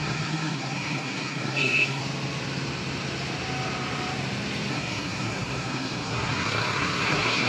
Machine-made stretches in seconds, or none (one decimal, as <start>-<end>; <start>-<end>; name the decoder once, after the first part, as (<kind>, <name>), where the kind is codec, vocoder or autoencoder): 0.0-2.0 (codec, SNAC); 4.7-7.5